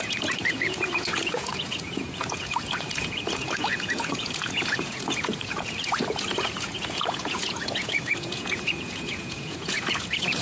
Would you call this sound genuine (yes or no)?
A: no